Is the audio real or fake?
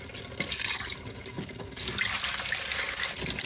real